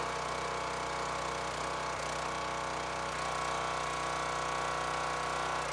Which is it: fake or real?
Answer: real